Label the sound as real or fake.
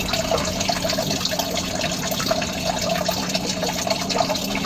real